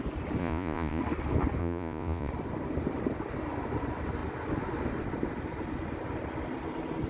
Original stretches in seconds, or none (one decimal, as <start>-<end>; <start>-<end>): 0.0-0.4; 1.0-1.6; 2.3-7.1